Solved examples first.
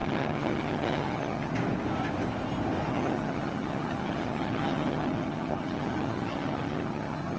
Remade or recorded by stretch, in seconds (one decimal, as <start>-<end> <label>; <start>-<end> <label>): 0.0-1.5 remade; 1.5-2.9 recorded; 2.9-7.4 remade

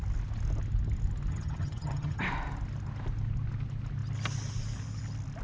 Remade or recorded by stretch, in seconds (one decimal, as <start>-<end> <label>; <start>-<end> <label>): 0.0-1.3 recorded; 1.3-2.2 remade; 2.2-5.4 recorded

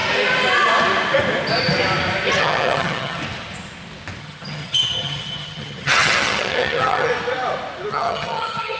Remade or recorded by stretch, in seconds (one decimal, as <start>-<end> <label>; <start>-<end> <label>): 0.0-2.4 recorded; 2.4-3.2 remade; 3.2-4.2 recorded; 4.2-7.1 remade; 7.1-7.9 recorded; 7.9-8.8 remade

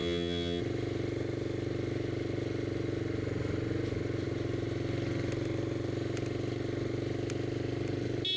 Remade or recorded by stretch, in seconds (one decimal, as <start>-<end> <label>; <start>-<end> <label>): 0.0-0.6 remade; 0.6-8.4 recorded

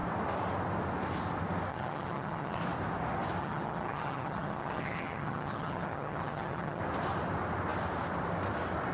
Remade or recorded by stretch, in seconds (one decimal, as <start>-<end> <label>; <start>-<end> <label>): 0.0-1.7 recorded; 1.7-2.6 remade; 2.6-3.4 recorded; 3.4-6.8 remade; 6.8-8.9 recorded